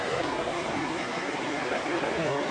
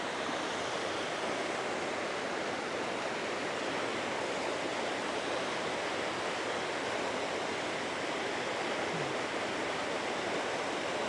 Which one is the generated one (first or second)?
first